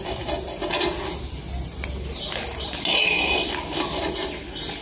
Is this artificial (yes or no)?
no